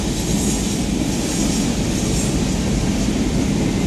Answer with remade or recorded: recorded